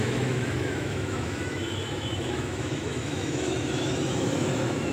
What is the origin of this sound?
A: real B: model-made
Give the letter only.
B